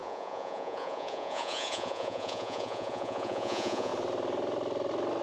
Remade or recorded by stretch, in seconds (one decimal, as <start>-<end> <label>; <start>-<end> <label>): 0.0-3.9 remade; 3.9-5.2 recorded